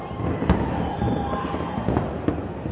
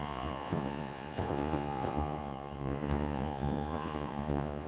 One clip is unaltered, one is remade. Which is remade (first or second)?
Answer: second